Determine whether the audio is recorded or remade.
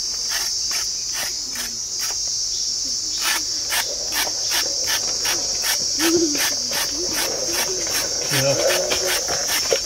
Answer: recorded